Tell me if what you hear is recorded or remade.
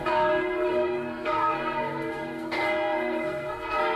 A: remade